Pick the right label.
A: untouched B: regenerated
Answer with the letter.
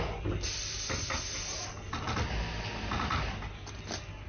A